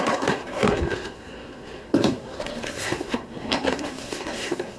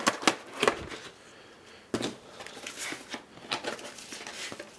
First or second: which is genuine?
second